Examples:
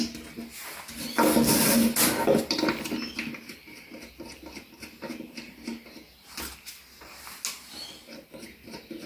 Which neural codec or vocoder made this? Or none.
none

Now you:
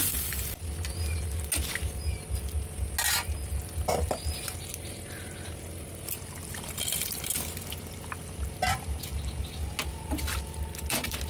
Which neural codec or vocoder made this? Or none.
none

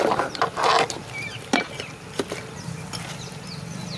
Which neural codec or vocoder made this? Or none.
none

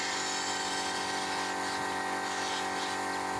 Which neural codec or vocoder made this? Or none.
none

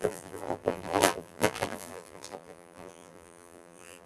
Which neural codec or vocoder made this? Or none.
vocoder, BigVGAN v2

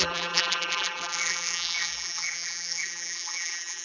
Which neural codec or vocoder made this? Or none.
vocoder, BigVGAN v2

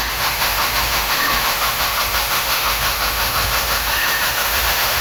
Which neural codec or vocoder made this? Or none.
autoencoder, DAC-VAE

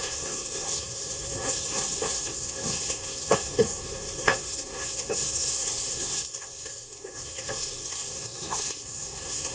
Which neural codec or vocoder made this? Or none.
codec, SNAC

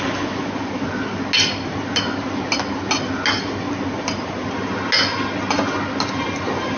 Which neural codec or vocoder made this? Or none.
none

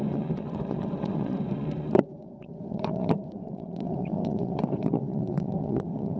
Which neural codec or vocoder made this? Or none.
vocoder, Vocos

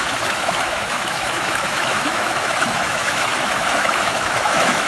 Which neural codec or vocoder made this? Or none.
autoencoder, DAC-VAE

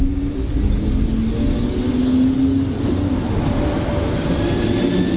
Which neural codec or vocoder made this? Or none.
none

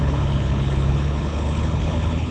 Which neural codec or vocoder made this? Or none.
codec, HILCodec